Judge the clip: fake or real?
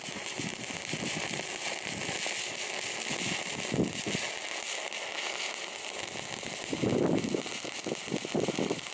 real